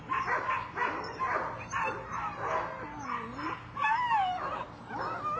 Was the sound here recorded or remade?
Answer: recorded